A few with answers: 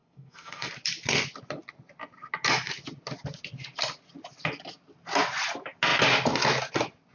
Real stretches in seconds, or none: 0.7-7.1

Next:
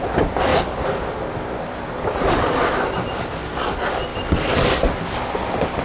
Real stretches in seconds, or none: 0.0-5.8

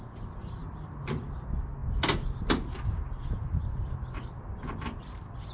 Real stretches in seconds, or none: 0.0-5.5

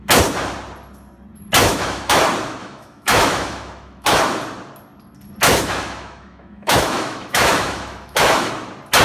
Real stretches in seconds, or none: 0.0-1.6; 2.2-2.6; 4.2-5.5; 8.5-9.0

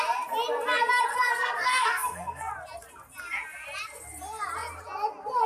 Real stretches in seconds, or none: 0.0-1.1; 2.5-5.5